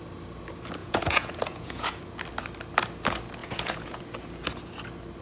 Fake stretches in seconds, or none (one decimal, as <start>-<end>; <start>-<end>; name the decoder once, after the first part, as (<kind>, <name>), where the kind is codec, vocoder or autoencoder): 0.8-2.0 (vocoder, Vocos); 3.4-4.0